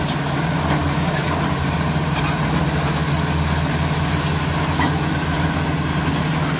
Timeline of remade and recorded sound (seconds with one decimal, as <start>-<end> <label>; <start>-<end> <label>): 0.0-6.6 recorded